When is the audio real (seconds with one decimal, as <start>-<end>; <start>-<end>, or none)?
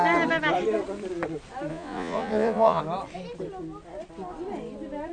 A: 0.0-1.7; 2.8-5.1